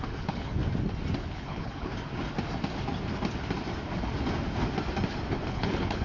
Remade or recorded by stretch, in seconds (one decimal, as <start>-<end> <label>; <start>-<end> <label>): 0.0-0.6 remade; 0.6-1.2 recorded; 1.2-1.9 remade; 1.9-5.5 recorded; 5.5-6.0 remade